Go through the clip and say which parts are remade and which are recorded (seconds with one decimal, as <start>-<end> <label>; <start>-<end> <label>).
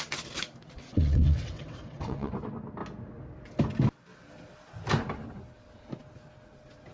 0.0-0.9 recorded; 0.9-2.3 remade; 2.3-6.9 recorded